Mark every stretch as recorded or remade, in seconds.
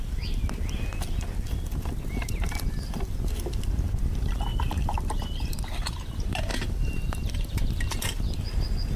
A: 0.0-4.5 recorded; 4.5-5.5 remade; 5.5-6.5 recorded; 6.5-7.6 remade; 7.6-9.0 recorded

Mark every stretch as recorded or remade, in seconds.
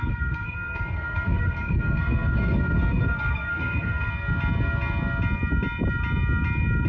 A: 0.0-4.1 remade; 4.1-6.9 recorded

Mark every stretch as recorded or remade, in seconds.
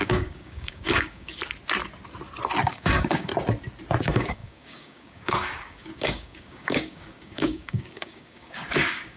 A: 0.0-1.4 remade; 1.4-2.7 recorded; 2.7-3.3 remade; 3.3-4.0 recorded; 4.0-9.2 remade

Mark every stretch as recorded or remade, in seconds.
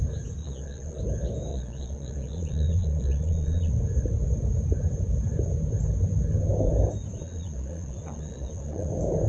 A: 0.0-0.4 recorded; 0.4-1.0 remade; 1.0-1.5 recorded; 1.5-3.7 remade; 3.7-7.2 recorded; 7.2-8.9 remade; 8.9-9.3 recorded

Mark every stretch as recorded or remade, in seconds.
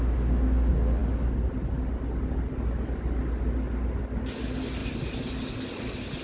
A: 0.0-6.2 recorded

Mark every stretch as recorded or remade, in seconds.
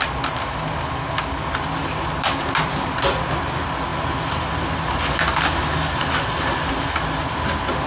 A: 0.0-7.9 recorded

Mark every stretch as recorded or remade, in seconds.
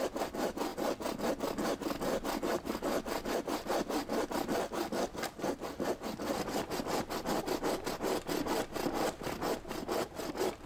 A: 0.0-10.7 recorded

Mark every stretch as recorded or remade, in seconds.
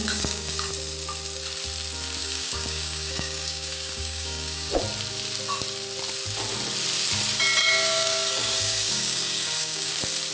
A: 0.0-0.7 remade; 0.7-2.2 recorded; 2.2-4.7 remade; 4.7-7.6 recorded; 7.6-9.9 remade; 9.9-10.3 recorded